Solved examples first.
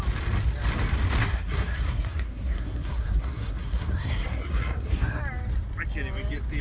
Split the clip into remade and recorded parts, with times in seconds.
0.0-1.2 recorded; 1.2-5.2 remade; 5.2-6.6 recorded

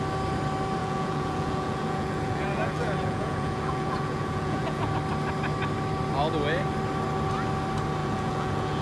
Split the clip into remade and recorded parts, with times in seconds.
0.0-0.8 recorded; 0.8-4.9 remade; 4.9-8.0 recorded; 8.0-8.8 remade

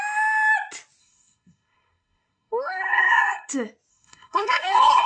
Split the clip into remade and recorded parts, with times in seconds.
0.0-1.0 recorded; 1.0-3.5 remade; 3.5-3.9 recorded; 3.9-5.1 remade